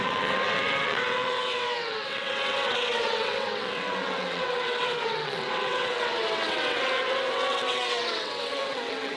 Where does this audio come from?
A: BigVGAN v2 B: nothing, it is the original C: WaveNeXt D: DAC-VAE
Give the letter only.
C